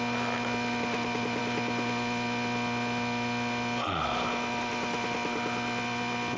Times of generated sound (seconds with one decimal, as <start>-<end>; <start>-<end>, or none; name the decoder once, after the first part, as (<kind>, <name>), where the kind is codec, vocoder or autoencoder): none

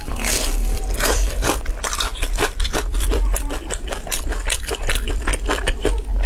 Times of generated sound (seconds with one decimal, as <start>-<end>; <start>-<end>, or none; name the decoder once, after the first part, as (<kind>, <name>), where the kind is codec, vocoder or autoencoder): 0.0-5.3 (vocoder, BigVGAN v2)

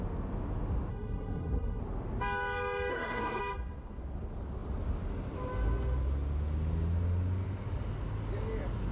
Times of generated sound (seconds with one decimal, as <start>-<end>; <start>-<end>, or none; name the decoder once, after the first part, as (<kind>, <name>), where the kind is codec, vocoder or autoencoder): 0.9-1.8 (codec, SNAC); 2.9-3.4